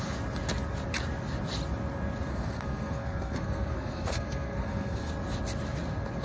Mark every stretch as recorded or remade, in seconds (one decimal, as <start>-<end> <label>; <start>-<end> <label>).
0.0-2.3 recorded; 2.3-5.1 remade; 5.1-6.2 recorded